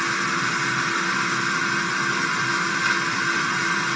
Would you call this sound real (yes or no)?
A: yes